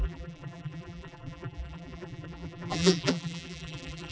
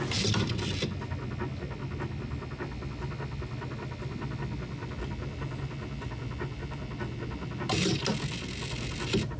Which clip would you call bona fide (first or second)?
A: second